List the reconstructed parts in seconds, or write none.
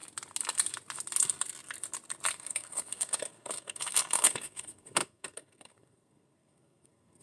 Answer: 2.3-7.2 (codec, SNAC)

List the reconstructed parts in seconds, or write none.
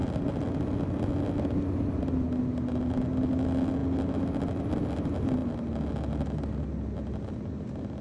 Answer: none